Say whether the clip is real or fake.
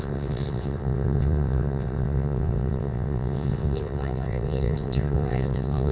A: fake